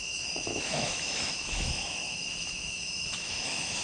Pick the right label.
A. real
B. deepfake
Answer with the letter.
B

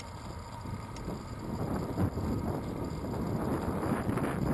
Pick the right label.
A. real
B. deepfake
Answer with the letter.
A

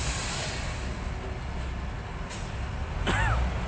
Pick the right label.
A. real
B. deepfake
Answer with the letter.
A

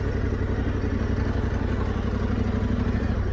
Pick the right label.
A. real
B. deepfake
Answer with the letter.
A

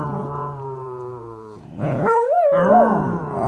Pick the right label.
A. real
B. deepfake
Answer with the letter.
B